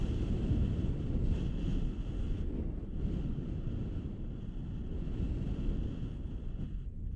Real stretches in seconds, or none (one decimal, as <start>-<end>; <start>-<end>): 0.0-7.2